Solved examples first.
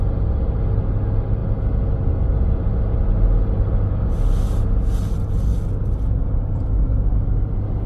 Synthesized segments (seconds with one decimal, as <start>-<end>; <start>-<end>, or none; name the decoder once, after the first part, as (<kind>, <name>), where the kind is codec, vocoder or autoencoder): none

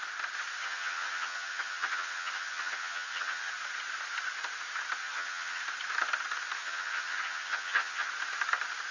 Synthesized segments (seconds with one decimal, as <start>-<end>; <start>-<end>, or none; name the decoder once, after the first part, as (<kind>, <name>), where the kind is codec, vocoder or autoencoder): 0.6-3.5 (vocoder, HiFi-GAN); 5.0-5.6; 6.6-8.1

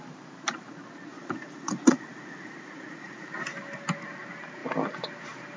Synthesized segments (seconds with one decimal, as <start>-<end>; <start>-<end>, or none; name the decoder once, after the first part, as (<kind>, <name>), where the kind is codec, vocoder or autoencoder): 1.1-3.3 (vocoder, Vocos)

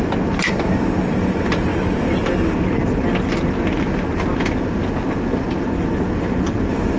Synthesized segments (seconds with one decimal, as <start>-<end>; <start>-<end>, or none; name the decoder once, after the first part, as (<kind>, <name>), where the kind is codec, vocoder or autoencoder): none

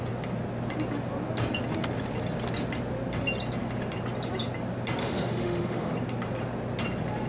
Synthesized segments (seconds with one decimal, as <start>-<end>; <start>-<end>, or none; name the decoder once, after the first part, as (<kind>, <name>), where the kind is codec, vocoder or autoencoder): 5.0-5.9 (autoencoder, DAC-VAE)